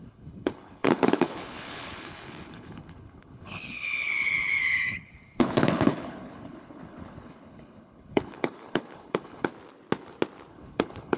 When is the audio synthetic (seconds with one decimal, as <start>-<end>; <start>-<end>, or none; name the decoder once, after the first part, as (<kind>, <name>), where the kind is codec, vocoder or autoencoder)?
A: 0.0-9.5 (codec, HILCodec); 10.5-11.2

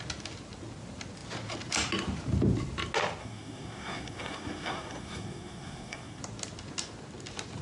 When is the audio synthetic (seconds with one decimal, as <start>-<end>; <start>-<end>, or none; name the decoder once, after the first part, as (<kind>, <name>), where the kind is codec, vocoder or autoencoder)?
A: 3.2-6.2 (codec, SNAC)

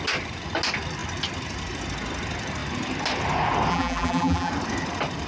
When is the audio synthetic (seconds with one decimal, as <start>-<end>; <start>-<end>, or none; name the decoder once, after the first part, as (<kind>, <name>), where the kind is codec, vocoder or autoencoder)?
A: 3.7-4.5 (vocoder, BigVGAN v2)

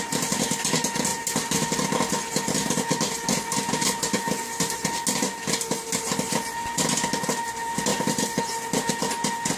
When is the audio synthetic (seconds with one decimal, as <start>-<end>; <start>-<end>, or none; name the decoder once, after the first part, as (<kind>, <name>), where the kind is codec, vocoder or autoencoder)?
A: none